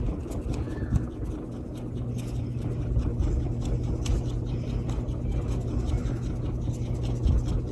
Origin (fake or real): real